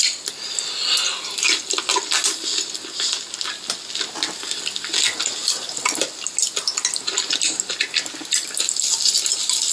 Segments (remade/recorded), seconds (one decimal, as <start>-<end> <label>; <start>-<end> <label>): 0.0-9.7 recorded